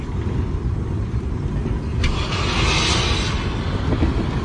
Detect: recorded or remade recorded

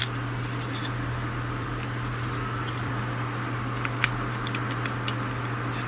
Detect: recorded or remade recorded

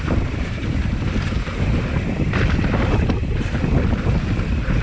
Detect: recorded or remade remade